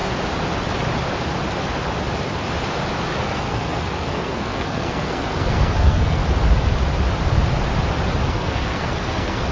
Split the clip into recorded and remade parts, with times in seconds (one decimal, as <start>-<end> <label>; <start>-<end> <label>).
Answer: 0.0-3.2 recorded; 3.2-6.2 remade; 6.2-8.3 recorded; 8.3-9.5 remade